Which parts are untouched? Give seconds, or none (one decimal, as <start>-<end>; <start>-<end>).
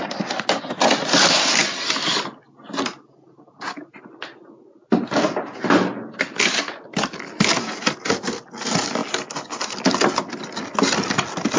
0.0-11.6